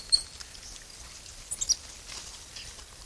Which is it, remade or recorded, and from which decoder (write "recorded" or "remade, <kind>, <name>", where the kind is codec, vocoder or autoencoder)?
recorded